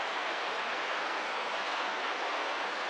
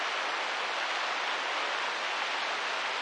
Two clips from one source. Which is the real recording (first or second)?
second